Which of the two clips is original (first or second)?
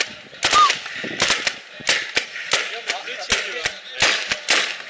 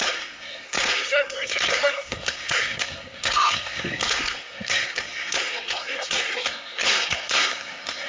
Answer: first